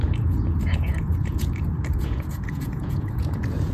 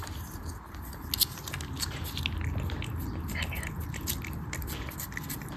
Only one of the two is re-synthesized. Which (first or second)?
first